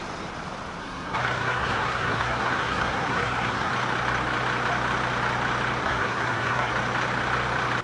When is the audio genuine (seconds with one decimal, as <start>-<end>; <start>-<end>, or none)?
0.0-0.8; 3.7-5.8; 6.7-7.8